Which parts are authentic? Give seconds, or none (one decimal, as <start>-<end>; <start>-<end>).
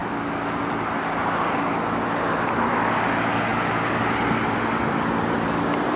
0.0-6.0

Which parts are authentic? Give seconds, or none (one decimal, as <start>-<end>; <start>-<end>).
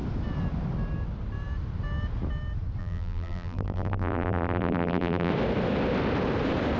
0.0-2.8; 5.3-6.8